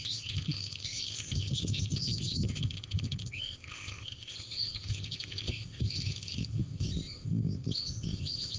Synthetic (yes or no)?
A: yes